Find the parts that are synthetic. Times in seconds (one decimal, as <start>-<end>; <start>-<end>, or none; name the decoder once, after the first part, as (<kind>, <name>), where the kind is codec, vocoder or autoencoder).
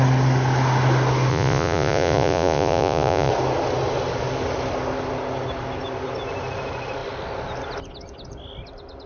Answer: 1.3-3.3 (vocoder, Vocos)